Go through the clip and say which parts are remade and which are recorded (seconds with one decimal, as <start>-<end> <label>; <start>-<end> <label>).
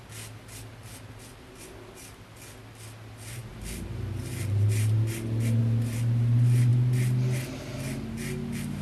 0.0-3.5 recorded; 3.5-5.6 remade; 5.6-8.8 recorded